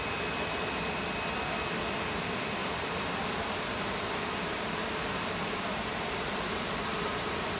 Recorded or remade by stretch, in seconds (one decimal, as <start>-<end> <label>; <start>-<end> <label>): 0.0-2.6 recorded; 2.6-7.6 remade